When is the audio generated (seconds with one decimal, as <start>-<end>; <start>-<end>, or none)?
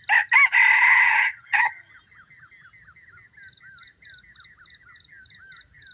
0.7-1.9